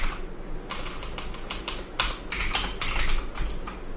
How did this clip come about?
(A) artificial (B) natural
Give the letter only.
B